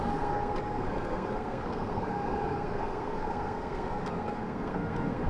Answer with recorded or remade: remade